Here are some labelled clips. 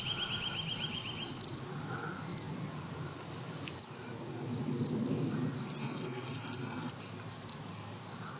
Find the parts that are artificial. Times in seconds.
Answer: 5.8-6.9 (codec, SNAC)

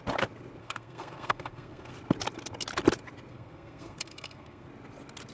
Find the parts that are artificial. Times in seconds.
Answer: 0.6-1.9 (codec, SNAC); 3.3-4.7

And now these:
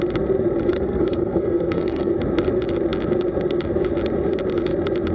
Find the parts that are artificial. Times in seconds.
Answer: 0.7-2.1 (codec, SNAC)

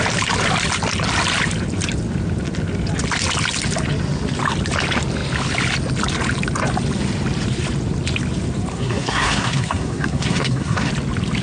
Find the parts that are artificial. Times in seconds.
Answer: 8.7-10.9 (codec, SNAC)